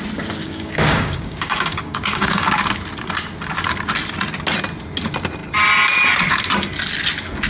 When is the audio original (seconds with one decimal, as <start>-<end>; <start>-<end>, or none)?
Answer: 0.0-0.4; 2.6-7.5